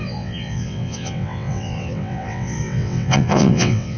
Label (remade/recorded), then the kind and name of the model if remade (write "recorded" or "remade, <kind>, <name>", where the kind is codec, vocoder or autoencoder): remade, vocoder, WaveNeXt